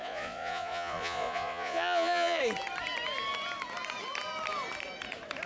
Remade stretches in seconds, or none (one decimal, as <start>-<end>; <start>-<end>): 0.0-2.4